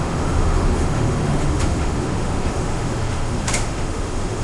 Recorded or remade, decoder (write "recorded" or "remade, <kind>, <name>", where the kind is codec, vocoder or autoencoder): remade, autoencoder, DAC-VAE